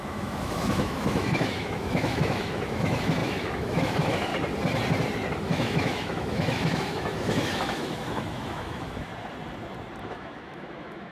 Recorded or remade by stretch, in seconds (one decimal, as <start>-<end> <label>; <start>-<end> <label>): 0.0-4.3 remade; 4.3-5.5 recorded; 5.5-9.1 remade; 9.1-10.0 recorded; 10.0-11.1 remade